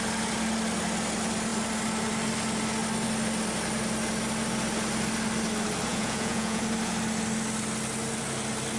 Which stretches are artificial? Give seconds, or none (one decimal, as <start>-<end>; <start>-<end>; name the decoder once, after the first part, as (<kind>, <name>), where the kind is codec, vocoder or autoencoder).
5.9-6.6 (vocoder, Vocos)